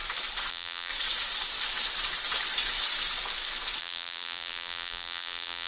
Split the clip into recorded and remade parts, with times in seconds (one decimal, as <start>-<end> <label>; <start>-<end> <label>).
0.0-0.5 recorded; 0.5-0.9 remade; 0.9-3.8 recorded; 3.8-5.7 remade